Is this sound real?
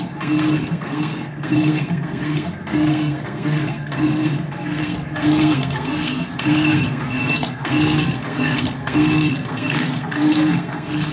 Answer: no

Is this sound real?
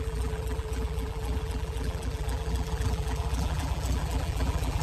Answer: no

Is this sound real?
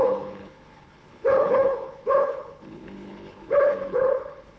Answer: no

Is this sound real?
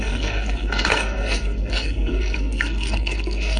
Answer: no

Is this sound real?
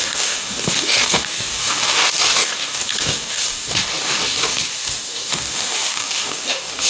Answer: no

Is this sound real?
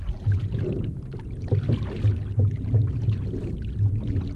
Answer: yes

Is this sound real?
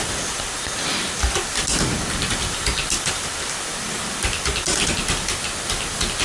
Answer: yes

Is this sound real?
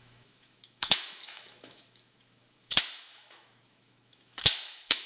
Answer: no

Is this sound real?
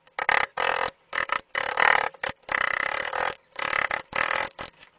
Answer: yes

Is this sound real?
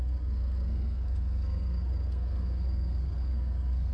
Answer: no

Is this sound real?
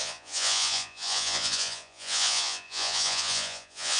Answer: no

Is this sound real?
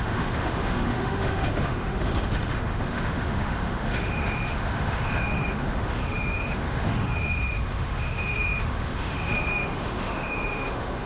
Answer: no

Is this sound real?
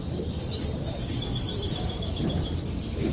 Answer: yes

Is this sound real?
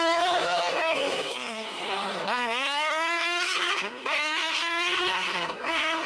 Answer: no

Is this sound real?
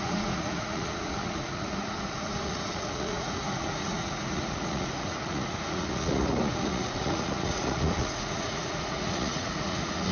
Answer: no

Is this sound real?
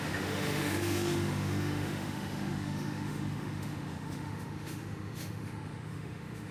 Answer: no